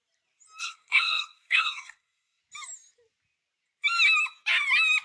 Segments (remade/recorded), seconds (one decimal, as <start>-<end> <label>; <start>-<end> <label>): 0.0-0.6 recorded; 0.6-2.4 remade; 2.4-5.0 recorded